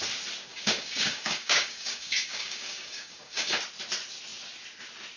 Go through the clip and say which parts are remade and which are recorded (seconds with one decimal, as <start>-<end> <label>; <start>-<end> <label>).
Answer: 0.0-0.5 recorded; 0.5-3.6 remade; 3.6-5.2 recorded